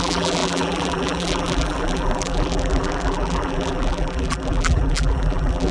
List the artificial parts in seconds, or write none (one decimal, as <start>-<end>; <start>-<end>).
0.0-5.7